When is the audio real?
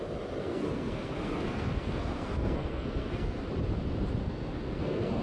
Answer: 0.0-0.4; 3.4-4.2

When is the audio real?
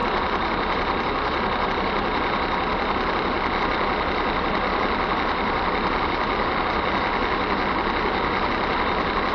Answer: 0.0-9.3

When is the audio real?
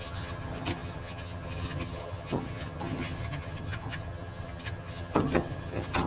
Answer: none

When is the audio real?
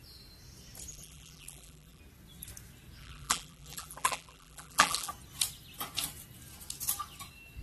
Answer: 0.0-0.9; 2.0-3.0; 5.1-7.6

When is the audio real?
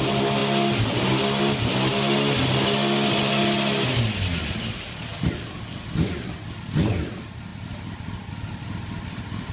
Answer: 0.0-9.5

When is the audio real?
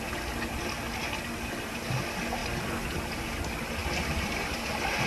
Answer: 0.0-5.1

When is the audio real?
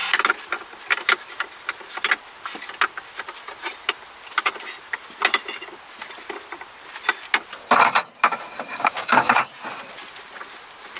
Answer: 0.0-8.7; 9.5-11.0